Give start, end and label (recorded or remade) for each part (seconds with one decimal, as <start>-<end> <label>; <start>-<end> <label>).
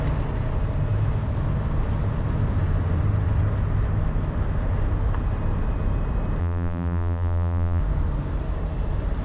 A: 0.0-6.4 recorded; 6.4-7.8 remade; 7.8-9.2 recorded